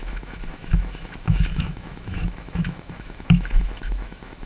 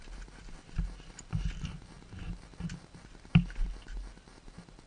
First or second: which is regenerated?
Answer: first